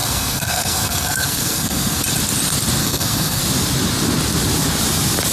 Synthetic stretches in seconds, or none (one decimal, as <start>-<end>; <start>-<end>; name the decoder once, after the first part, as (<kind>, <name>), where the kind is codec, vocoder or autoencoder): 0.0-2.0 (codec, SNAC); 2.8-3.4